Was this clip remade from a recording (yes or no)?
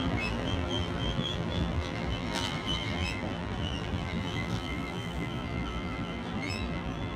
yes